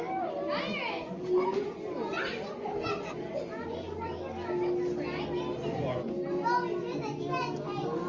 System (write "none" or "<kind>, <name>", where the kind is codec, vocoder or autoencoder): none